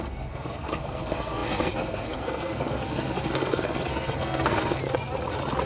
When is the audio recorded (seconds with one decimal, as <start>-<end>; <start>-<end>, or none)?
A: 4.8-5.7

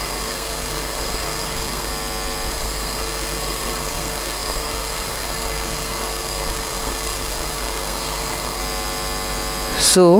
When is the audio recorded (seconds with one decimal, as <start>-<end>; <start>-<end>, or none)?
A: 1.9-2.5; 8.6-10.2

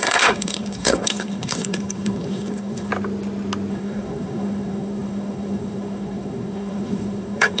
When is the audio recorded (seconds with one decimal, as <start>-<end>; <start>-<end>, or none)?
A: 2.9-3.7

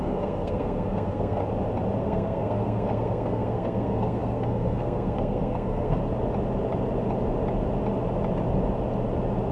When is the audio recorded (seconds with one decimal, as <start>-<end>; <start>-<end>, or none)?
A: 1.4-2.0; 6.0-9.5

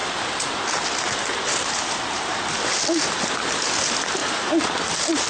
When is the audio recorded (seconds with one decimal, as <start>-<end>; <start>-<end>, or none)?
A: 0.0-5.3

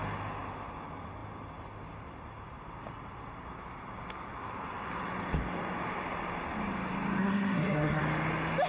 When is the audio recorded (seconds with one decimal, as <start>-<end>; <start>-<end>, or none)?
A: 0.0-7.2; 8.0-8.7

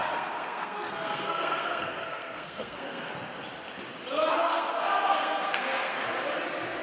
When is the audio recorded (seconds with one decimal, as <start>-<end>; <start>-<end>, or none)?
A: 3.1-4.5; 6.0-6.8